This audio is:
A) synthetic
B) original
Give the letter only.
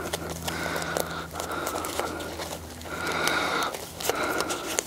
B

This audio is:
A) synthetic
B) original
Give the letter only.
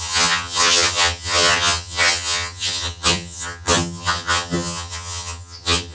A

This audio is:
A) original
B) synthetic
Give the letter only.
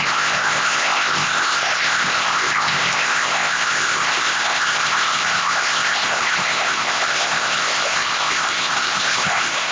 B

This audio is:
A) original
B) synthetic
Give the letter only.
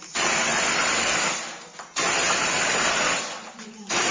A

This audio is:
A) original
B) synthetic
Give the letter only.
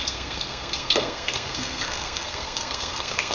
B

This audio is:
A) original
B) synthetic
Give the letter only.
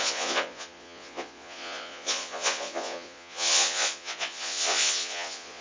B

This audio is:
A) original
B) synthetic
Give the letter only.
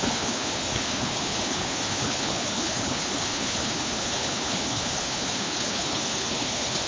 B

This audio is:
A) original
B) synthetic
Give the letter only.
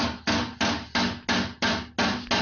A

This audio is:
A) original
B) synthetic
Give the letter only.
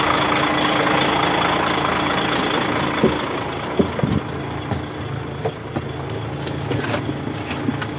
A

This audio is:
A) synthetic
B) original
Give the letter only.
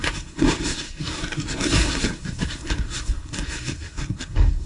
A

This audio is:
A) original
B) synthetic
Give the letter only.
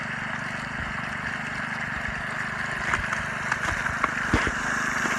A